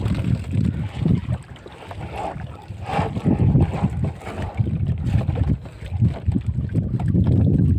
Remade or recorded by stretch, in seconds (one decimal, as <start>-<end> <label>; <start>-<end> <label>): 0.0-7.8 recorded